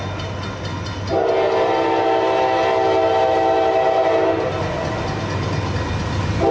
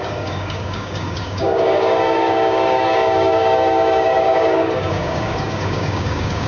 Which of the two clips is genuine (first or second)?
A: first